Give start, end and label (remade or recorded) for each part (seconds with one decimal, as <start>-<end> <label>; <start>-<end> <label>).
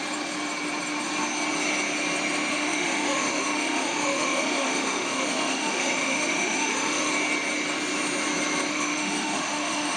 0.0-2.5 recorded; 2.5-7.1 remade; 7.1-8.7 recorded; 8.7-10.0 remade